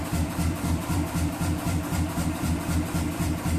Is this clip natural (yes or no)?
no